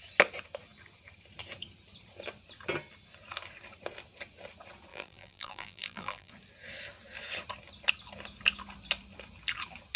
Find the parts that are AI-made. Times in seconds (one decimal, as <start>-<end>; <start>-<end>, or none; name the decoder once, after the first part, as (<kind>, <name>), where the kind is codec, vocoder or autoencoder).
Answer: 4.9-6.3 (vocoder, BigVGAN v2)